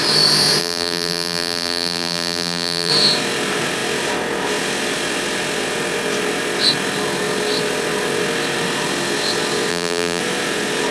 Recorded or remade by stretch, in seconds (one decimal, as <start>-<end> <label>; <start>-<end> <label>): 0.0-0.6 recorded; 0.6-2.9 remade; 2.9-9.7 recorded; 9.7-10.2 remade; 10.2-10.9 recorded